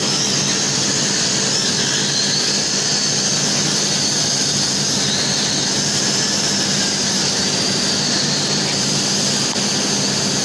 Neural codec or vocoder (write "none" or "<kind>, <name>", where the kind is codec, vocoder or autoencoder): none